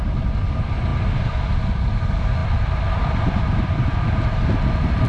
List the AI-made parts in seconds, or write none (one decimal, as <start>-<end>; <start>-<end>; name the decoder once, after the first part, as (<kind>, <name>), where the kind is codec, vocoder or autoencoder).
none